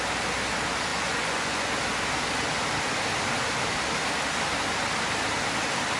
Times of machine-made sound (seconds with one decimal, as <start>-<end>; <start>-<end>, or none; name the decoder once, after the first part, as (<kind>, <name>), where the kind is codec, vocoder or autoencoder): 0.9-1.7 (vocoder, Vocos)